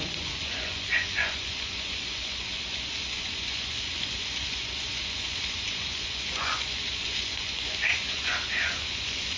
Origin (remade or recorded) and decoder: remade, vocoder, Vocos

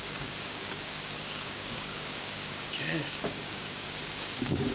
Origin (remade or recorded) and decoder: remade, codec, DAC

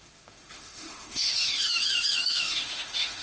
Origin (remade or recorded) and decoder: remade, autoencoder, DAC-VAE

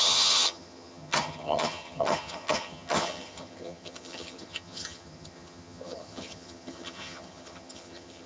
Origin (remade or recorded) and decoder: remade, vocoder, HiFi-GAN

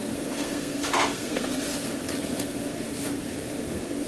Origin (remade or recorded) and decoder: remade, codec, SNAC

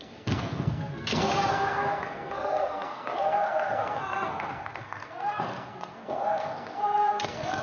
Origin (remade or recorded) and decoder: remade, codec, SNAC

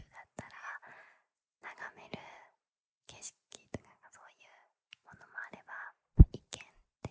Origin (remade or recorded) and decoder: remade, vocoder, BigVGAN v2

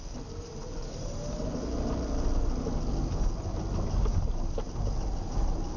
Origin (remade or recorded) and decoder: recorded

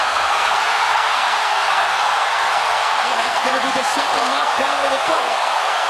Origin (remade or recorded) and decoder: remade, codec, SNAC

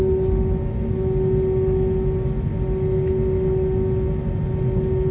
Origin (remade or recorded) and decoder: recorded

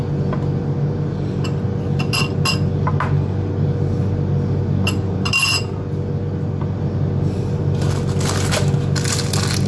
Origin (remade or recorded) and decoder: recorded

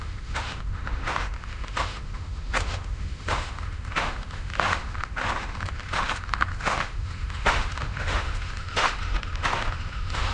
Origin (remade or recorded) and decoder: remade, autoencoder, DAC-VAE